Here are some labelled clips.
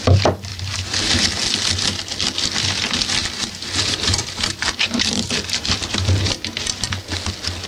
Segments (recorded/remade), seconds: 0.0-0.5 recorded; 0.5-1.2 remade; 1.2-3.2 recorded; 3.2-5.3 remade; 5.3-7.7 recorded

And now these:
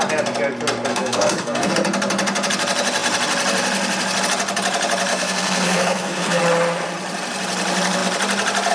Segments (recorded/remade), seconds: 0.0-0.9 recorded; 0.9-1.7 remade; 1.7-5.1 recorded; 5.1-6.4 remade; 6.4-8.7 recorded

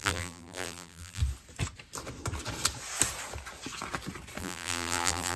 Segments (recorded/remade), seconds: 0.0-1.2 remade; 1.2-4.4 recorded; 4.4-5.4 remade

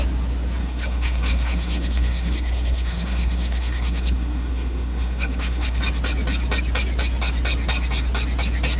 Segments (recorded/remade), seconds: 0.0-0.6 recorded; 0.6-5.8 remade; 5.8-8.8 recorded

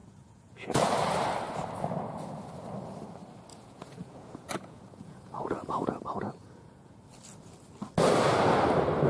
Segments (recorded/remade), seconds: 0.0-0.9 remade; 0.9-3.5 recorded; 3.5-7.0 remade; 7.0-9.1 recorded

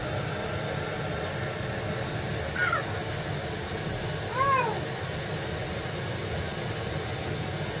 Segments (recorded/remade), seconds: 0.0-7.8 recorded

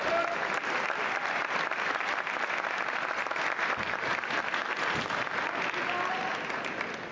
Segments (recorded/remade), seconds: 0.0-7.1 recorded

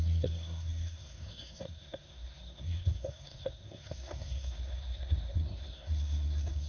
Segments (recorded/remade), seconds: 0.0-6.7 remade